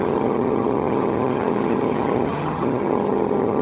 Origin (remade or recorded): remade